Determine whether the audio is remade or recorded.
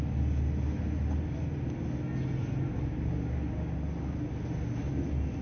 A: recorded